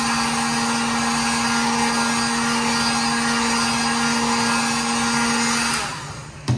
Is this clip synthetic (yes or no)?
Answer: no